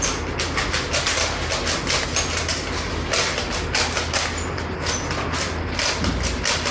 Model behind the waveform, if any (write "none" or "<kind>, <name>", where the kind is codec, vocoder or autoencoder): none